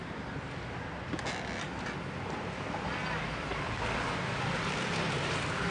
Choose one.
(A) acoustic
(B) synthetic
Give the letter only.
A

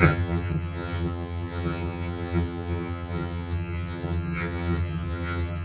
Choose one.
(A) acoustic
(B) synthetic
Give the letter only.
B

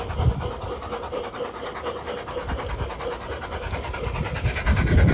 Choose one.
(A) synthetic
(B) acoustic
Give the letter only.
B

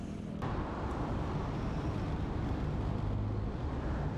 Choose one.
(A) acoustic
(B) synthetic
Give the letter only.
A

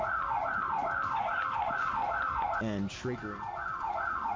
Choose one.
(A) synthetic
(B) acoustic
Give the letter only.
A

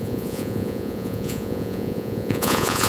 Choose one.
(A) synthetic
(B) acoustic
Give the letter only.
A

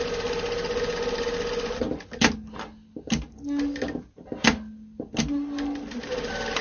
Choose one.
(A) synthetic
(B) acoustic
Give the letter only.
B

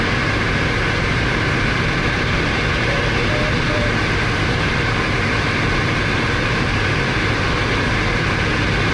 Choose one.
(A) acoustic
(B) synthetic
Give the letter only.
B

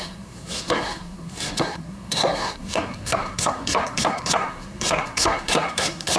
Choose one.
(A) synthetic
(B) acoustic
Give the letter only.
A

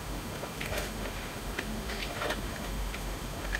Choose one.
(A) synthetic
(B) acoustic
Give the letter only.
A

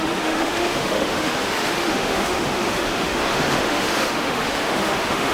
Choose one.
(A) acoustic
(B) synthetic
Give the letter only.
B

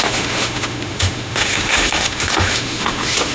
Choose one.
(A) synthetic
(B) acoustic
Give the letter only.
A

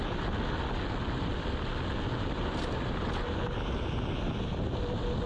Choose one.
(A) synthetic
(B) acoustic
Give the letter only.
B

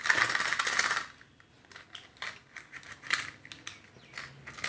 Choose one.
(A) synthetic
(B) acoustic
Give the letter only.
B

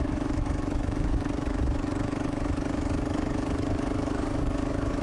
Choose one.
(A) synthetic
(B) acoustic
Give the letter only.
A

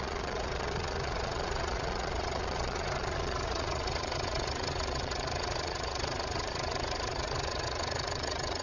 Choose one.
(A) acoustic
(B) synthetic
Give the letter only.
B